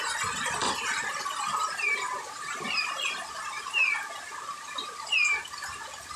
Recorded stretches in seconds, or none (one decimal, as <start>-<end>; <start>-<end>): 0.0-0.6; 2.9-6.2